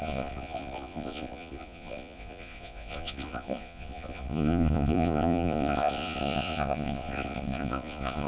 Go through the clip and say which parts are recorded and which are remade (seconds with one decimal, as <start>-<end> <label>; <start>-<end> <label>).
0.0-8.3 remade